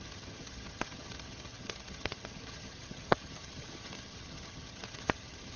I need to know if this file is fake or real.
fake